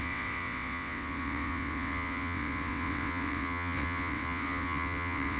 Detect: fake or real fake